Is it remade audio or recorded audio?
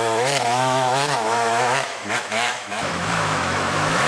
remade